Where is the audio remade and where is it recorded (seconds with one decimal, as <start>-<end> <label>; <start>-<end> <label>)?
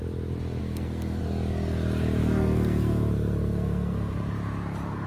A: 0.0-0.6 recorded; 0.6-1.2 remade; 1.2-2.2 recorded; 2.2-4.1 remade; 4.1-5.1 recorded